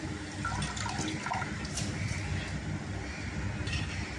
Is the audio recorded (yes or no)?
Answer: yes